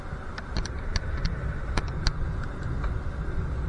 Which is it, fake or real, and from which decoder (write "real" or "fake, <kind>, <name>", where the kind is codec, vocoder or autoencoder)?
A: real